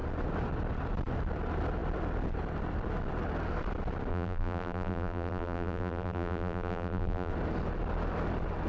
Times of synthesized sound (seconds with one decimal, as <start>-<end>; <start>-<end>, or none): 4.1-7.3